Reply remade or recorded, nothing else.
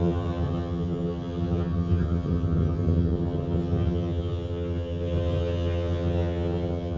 remade